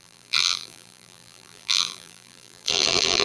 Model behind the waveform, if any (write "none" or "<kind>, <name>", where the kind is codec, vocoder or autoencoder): vocoder, BigVGAN v2